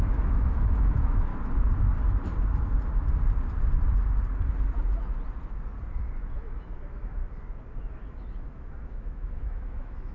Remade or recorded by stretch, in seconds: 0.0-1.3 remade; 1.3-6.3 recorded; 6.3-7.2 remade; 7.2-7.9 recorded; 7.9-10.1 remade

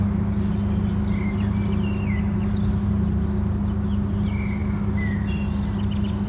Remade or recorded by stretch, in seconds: 0.0-6.3 recorded

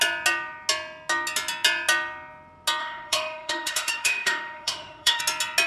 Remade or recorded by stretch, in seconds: 0.0-2.8 recorded; 2.8-5.2 remade; 5.2-5.7 recorded

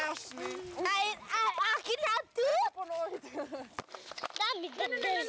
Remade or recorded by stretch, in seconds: 0.0-5.3 recorded